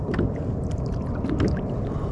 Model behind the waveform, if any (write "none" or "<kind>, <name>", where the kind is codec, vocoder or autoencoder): none